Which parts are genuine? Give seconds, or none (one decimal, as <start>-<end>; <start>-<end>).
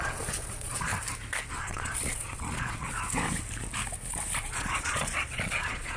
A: 0.9-1.5; 2.9-4.4